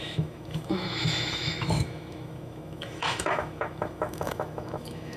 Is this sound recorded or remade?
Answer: remade